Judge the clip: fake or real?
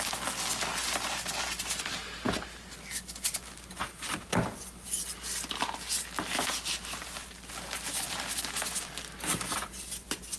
real